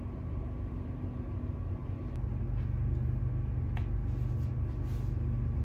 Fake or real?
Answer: real